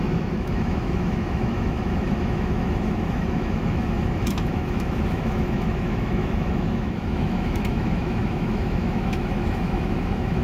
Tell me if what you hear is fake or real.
fake